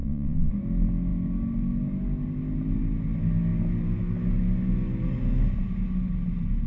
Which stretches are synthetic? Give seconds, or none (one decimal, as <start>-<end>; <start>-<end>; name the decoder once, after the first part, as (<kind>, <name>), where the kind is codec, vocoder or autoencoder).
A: 0.0-0.5 (vocoder, WaveNeXt)